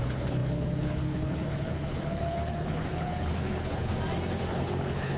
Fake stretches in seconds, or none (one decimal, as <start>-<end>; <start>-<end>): 0.0-3.9; 4.5-5.2